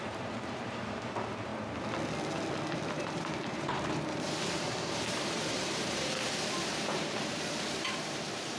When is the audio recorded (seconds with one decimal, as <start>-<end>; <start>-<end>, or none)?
1.5-2.9